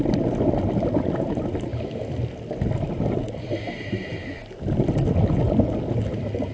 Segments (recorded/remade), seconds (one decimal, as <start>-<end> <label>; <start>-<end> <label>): 0.0-6.5 recorded